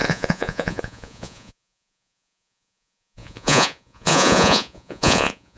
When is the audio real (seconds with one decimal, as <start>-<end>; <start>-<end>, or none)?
none